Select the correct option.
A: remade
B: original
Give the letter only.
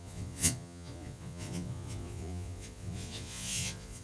A